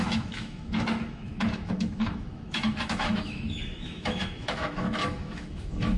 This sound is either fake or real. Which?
fake